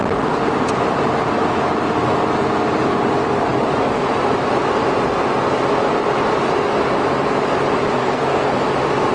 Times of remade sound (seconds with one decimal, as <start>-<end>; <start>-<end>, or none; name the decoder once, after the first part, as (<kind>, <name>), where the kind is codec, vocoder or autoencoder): 8.0-8.5 (codec, SNAC)